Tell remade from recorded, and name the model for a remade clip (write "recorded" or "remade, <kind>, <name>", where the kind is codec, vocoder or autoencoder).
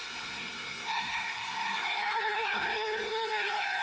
remade, codec, SNAC